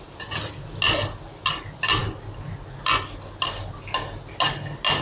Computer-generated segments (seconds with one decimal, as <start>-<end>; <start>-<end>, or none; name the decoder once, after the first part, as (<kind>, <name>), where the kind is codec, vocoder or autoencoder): none